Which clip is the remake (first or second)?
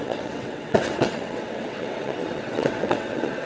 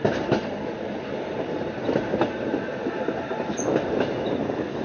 first